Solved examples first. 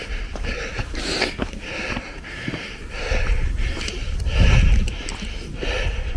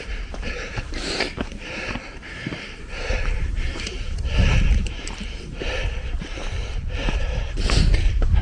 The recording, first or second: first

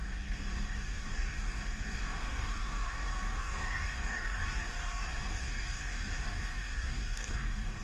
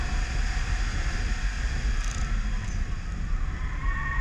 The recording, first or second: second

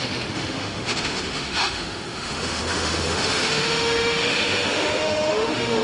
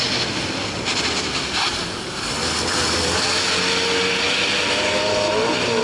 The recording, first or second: second